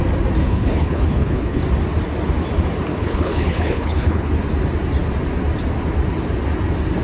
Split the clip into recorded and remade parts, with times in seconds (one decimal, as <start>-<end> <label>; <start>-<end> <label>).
0.0-0.4 recorded; 0.4-1.6 remade; 1.6-2.9 recorded; 2.9-4.3 remade; 4.3-7.0 recorded

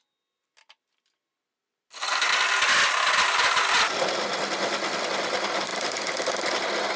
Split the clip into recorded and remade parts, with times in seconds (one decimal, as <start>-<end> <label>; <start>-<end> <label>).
0.0-7.0 recorded

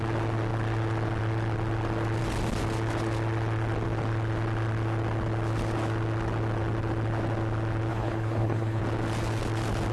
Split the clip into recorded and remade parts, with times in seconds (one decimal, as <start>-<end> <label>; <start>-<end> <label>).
0.0-7.9 recorded; 7.9-8.8 remade; 8.8-9.9 recorded

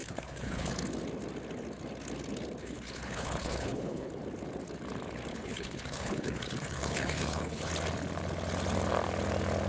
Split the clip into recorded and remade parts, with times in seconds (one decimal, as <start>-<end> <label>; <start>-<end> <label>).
0.0-0.7 remade; 0.7-2.6 recorded; 2.6-4.1 remade; 4.1-5.3 recorded; 5.3-7.7 remade; 7.7-9.7 recorded

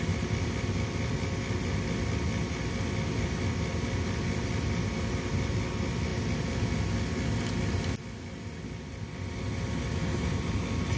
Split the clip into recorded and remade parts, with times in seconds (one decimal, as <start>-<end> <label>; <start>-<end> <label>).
0.0-11.0 recorded

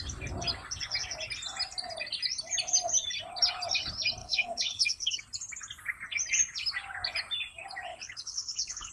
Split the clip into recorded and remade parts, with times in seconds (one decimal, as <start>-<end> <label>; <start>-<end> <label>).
0.0-4.2 recorded; 4.2-5.2 remade; 5.2-7.9 recorded; 7.9-8.9 remade